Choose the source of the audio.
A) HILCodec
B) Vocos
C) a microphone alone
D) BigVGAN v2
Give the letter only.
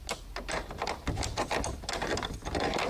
C